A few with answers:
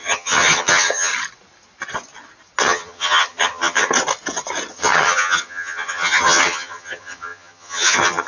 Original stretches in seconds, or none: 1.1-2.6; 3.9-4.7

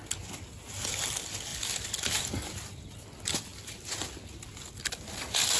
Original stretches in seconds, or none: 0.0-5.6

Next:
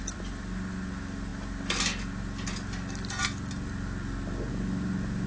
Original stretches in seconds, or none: 0.0-5.3

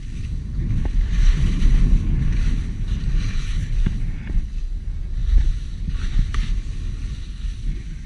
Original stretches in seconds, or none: 0.0-8.1

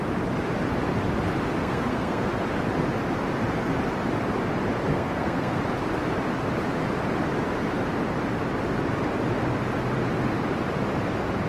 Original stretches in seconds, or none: 0.0-1.6; 2.3-4.9; 5.6-11.5